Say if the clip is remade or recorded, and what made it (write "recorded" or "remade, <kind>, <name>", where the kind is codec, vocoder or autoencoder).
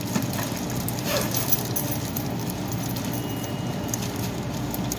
recorded